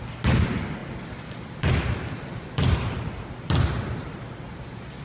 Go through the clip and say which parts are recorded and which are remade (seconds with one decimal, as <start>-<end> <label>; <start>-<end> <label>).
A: 0.0-5.0 recorded

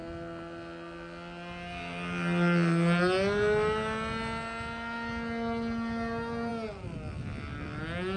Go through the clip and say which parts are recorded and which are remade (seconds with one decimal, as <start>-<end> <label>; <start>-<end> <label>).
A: 0.0-8.2 recorded

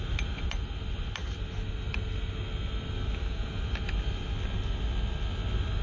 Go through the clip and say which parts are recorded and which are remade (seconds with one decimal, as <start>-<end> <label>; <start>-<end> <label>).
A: 0.0-5.8 recorded

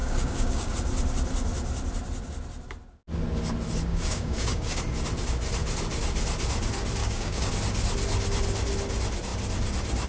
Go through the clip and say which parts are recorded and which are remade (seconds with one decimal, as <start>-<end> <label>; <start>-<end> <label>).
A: 0.0-0.7 remade; 0.7-3.9 recorded; 3.9-4.8 remade; 4.8-7.0 recorded; 7.0-7.5 remade; 7.5-10.1 recorded

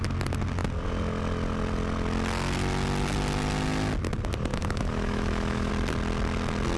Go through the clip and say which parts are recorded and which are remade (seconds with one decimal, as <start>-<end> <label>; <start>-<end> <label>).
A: 0.0-4.5 recorded; 4.5-5.7 remade; 5.7-6.8 recorded

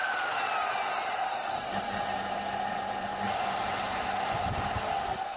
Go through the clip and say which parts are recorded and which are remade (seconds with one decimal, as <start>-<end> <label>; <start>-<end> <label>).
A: 0.0-1.1 recorded; 1.1-5.4 remade

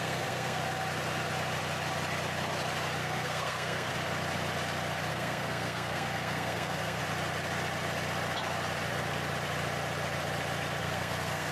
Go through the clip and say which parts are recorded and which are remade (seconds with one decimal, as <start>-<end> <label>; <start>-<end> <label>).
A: 0.0-0.6 remade; 0.6-3.0 recorded; 3.0-3.9 remade; 3.9-5.1 recorded; 5.1-7.0 remade; 7.0-10.8 recorded; 10.8-11.5 remade